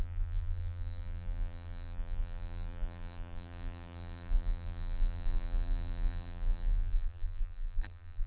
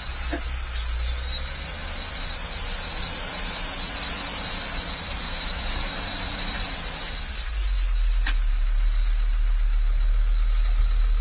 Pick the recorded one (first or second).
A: second